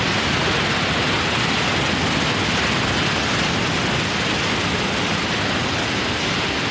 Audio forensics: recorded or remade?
recorded